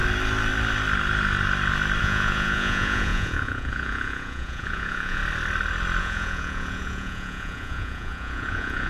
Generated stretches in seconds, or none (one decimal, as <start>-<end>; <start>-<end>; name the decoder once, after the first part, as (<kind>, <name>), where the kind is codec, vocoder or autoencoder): 2.0-5.2 (vocoder, Vocos); 6.0-8.9